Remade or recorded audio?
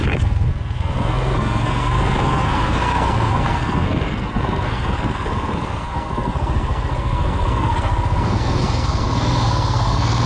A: remade